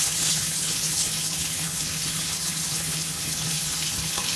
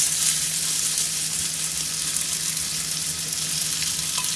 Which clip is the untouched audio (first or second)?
second